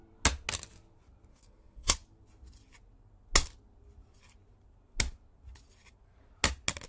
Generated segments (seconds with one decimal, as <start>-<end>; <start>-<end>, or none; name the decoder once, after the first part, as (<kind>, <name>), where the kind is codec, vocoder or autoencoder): 1.3-1.9 (codec, SNAC)